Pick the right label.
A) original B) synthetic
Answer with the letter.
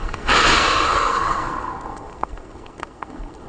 B